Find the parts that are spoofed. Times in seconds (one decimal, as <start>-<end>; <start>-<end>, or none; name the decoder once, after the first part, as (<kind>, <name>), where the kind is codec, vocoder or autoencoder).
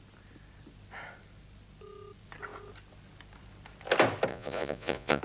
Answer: 4.3-5.2 (vocoder, Vocos)